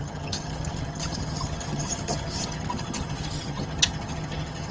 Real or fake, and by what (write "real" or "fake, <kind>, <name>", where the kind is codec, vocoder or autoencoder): fake, vocoder, HiFi-GAN